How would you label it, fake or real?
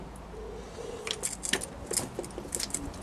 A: real